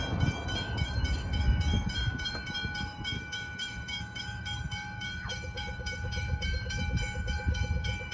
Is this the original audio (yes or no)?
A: no